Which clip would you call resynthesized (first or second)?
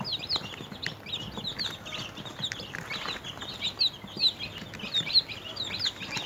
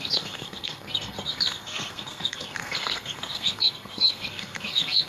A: second